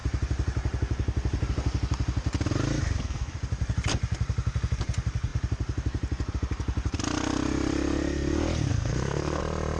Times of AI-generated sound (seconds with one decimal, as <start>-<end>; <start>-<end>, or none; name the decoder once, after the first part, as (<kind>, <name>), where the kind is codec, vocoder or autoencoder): 2.8-3.3 (codec, SNAC); 8.7-9.4